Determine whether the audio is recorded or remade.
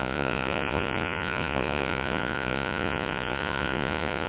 remade